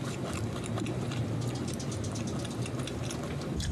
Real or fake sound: real